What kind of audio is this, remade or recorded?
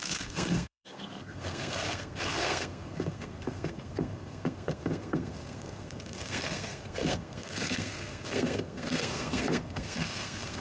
remade